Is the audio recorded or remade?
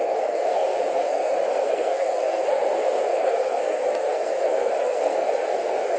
remade